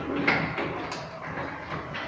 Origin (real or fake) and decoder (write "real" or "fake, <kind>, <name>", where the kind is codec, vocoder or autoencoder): real